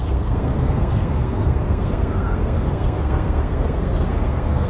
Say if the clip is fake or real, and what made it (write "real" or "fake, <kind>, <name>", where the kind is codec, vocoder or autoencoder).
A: fake, codec, SNAC